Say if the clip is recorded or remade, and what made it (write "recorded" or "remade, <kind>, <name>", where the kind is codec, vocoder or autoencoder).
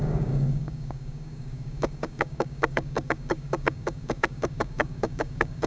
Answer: remade, codec, DAC